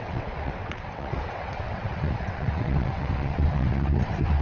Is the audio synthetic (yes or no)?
yes